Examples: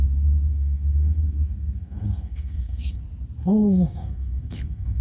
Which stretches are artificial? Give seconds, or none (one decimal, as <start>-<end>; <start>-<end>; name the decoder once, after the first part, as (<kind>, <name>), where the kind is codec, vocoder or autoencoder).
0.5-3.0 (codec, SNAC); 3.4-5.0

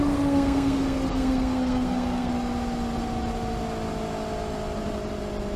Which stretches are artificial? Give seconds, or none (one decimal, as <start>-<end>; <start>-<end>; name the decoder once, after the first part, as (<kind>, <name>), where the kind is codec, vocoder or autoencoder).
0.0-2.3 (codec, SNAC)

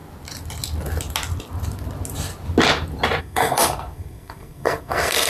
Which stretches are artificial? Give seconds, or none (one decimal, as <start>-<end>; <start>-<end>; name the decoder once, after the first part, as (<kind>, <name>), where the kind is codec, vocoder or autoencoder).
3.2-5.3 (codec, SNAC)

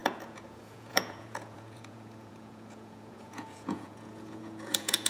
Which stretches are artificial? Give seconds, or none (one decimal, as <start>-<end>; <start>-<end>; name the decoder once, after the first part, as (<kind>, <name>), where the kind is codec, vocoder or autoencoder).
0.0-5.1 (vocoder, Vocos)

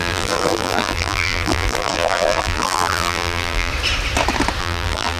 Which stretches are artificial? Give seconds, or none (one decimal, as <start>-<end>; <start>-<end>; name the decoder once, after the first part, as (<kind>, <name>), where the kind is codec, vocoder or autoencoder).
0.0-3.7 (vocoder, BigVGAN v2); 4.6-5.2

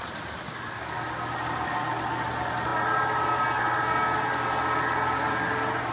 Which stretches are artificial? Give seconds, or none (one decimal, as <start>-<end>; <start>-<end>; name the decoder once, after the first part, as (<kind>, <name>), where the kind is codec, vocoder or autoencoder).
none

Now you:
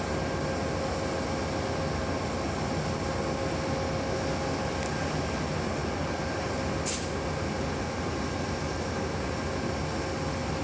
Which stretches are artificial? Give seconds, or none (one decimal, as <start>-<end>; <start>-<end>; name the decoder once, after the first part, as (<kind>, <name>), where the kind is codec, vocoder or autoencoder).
none